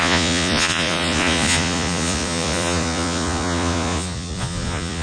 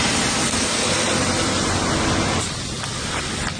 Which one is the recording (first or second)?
second